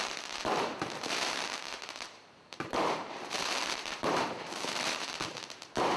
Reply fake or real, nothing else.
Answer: fake